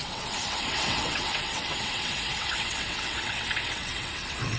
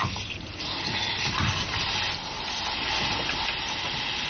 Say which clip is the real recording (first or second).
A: second